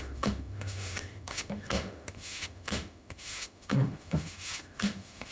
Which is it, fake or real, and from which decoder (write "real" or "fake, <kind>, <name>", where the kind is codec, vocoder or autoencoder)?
fake, autoencoder, DAC-VAE